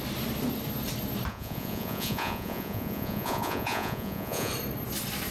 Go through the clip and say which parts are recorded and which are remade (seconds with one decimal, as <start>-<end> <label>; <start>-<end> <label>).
0.0-1.3 recorded; 1.3-4.5 remade; 4.5-5.3 recorded